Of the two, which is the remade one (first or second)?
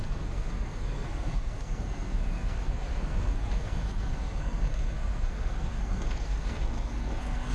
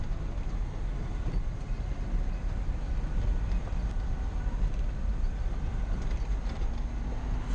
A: first